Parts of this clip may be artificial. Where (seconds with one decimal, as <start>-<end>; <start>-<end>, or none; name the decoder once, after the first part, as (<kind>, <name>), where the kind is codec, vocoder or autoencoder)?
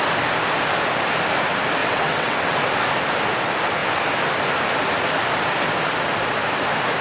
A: 1.8-2.6 (vocoder, WaveNeXt)